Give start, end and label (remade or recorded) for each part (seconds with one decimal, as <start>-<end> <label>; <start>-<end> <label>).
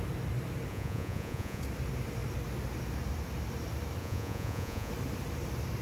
0.0-0.7 recorded; 0.7-1.6 remade; 1.6-4.0 recorded; 4.0-4.9 remade; 4.9-5.8 recorded